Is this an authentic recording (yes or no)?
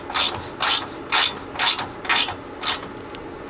yes